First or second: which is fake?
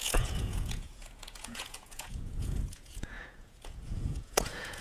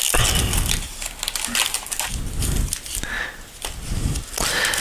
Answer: first